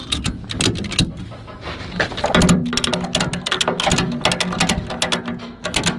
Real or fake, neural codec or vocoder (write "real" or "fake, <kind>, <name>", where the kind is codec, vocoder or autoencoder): real